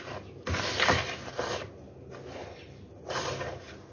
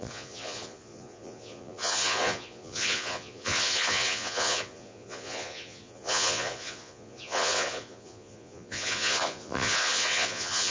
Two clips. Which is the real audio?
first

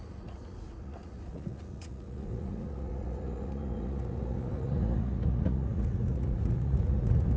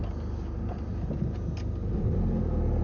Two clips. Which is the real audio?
second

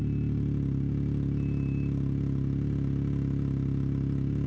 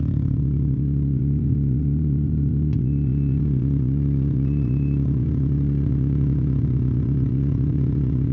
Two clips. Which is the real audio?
first